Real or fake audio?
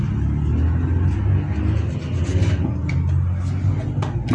real